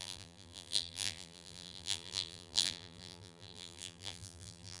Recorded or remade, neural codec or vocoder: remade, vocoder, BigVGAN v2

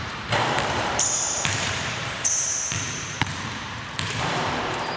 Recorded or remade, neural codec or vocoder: remade, vocoder, BigVGAN v2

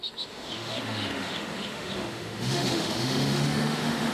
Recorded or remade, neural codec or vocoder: remade, autoencoder, DAC-VAE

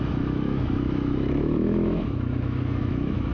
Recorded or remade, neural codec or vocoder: remade, autoencoder, DAC-VAE